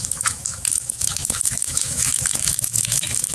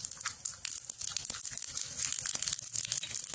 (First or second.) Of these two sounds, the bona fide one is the second